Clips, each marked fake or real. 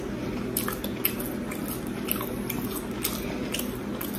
real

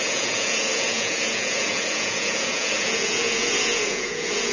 fake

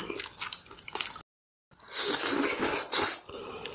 real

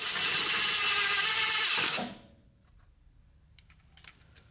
real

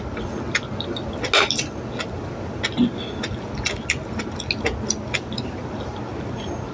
real